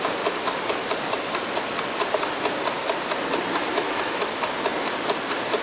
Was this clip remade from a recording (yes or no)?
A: no